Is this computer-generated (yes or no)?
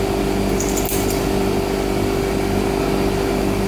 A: no